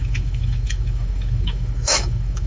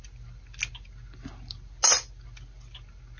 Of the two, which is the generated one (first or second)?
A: first